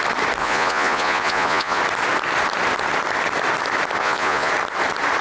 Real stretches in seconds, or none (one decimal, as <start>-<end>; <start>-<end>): 0.0-0.4; 1.8-4.0; 4.5-5.2